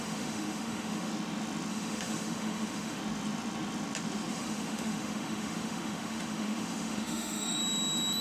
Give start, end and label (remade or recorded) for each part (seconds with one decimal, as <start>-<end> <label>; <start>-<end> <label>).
0.0-1.1 remade; 1.1-1.7 recorded; 1.7-3.0 remade; 3.0-4.3 recorded; 4.3-7.6 remade; 7.6-8.2 recorded